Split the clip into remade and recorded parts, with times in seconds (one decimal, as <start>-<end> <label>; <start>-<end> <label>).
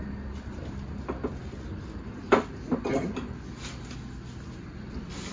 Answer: 0.0-5.3 recorded